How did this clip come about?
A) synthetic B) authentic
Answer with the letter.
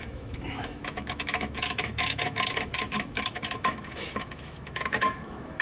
A